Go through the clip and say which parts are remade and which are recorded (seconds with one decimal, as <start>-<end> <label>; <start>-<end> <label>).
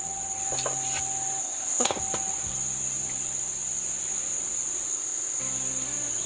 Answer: 0.0-1.4 recorded; 1.4-2.0 remade; 2.0-4.9 recorded; 4.9-5.4 remade; 5.4-6.3 recorded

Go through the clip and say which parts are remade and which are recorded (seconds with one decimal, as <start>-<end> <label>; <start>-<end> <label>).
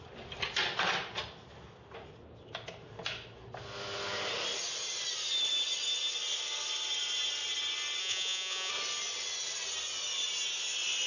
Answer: 0.0-8.0 recorded; 8.0-8.7 remade; 8.7-11.1 recorded